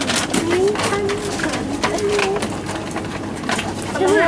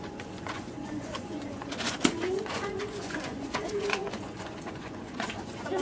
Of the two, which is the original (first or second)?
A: first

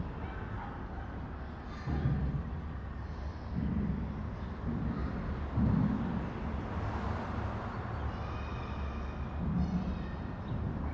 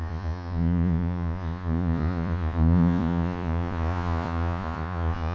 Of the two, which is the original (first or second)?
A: first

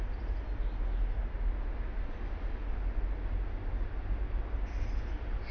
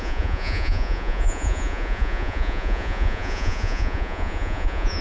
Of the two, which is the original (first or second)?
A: first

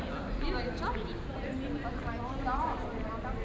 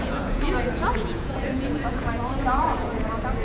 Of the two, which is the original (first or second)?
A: first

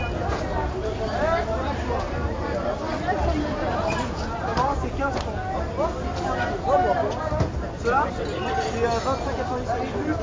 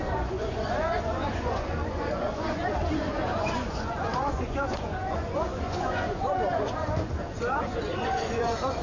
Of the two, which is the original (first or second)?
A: first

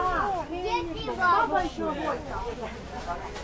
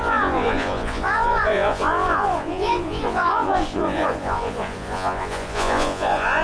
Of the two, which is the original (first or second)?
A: first